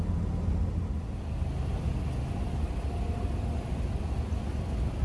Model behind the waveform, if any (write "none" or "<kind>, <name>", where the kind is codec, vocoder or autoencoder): none